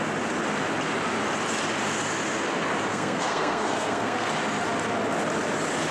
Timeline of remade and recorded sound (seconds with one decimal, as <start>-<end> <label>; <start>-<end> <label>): 0.0-2.9 recorded; 2.9-4.3 remade; 4.3-5.9 recorded

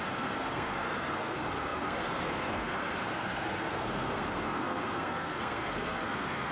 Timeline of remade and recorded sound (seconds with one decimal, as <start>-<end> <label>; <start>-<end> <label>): 0.0-6.5 remade

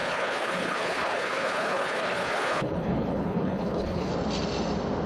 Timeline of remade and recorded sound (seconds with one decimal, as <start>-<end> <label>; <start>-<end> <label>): 0.0-4.1 remade; 4.1-5.1 recorded

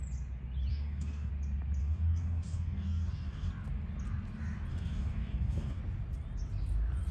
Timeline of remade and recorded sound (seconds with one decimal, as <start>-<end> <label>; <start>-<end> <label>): 0.0-0.7 recorded; 0.7-1.3 remade; 1.3-1.8 recorded; 1.8-3.5 remade; 3.5-4.7 recorded; 4.7-5.8 remade; 5.8-7.1 recorded

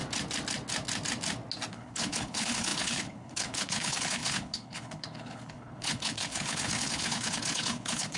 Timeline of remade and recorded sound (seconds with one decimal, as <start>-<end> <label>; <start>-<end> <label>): 0.0-1.7 recorded; 1.7-8.2 remade

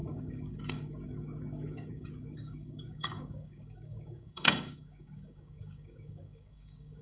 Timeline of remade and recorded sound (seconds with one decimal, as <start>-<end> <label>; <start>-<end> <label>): 0.0-7.0 remade

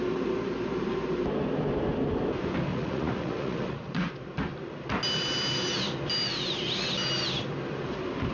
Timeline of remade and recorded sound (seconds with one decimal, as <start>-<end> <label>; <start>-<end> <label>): 0.0-2.7 recorded; 2.7-4.1 remade; 4.1-8.3 recorded

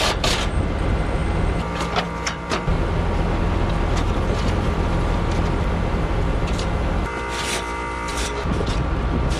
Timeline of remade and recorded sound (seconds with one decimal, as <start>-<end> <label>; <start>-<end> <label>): 0.0-8.1 recorded; 8.1-8.7 remade; 8.7-9.4 recorded